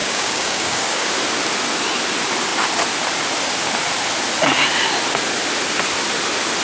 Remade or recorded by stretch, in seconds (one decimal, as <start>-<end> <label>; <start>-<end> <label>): 0.0-1.1 remade; 1.1-6.6 recorded